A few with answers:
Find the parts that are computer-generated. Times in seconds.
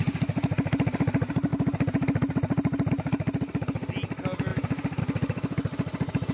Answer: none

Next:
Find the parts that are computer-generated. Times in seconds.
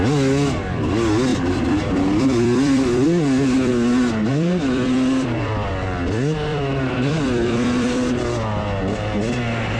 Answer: 1.3-3.7 (vocoder, BigVGAN v2); 4.3-5.7; 6.5-8.2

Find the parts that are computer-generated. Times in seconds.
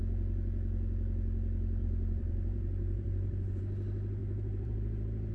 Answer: 1.8-3.6 (vocoder, BigVGAN v2); 4.2-5.3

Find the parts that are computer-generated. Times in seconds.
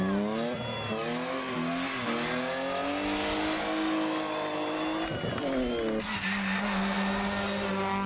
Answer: none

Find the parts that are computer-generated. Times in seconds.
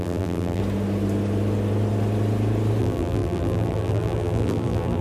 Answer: 0.0-0.6 (vocoder, BigVGAN v2); 2.8-5.0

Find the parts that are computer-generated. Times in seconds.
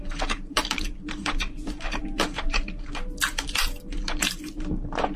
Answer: 0.5-5.2 (vocoder, BigVGAN v2)